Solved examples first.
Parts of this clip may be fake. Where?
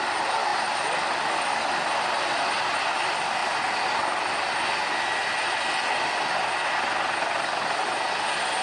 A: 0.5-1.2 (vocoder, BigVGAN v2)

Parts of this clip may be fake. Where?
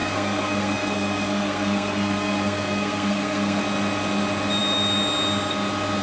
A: 0.0-3.6 (codec, SNAC)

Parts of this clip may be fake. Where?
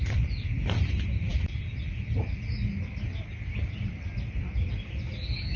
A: none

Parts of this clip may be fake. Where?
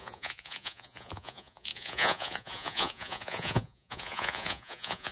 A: 0.0-5.1 (vocoder, Vocos)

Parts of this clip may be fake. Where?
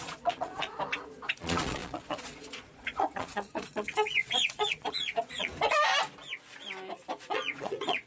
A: 0.0-0.7 (vocoder, Vocos); 1.3-5.5; 7.3-8.1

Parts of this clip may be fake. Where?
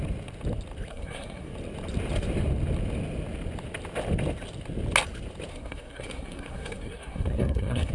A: 0.9-1.5 (codec, SNAC); 5.5-7.9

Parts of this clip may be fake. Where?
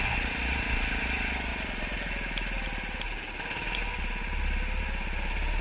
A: none